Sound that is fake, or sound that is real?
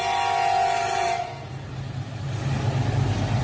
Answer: real